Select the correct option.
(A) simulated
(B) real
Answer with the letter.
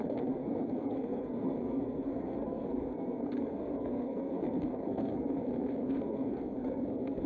A